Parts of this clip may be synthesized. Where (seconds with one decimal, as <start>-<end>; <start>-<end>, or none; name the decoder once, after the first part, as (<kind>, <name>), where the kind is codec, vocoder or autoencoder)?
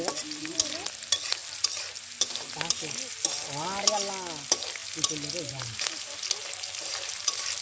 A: none